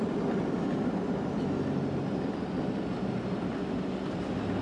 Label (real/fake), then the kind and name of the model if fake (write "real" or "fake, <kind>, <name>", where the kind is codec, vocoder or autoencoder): real